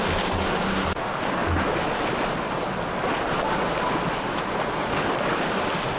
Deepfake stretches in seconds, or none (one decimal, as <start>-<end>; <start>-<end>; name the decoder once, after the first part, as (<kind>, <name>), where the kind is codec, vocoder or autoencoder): none